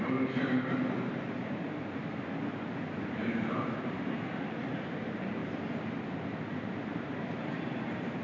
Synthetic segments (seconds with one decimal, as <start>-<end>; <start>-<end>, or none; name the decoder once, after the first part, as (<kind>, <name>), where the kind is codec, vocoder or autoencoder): 0.0-5.4 (vocoder, BigVGAN v2); 6.5-8.2